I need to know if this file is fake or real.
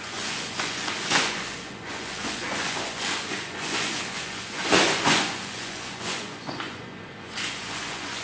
fake